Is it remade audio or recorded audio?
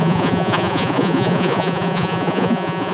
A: remade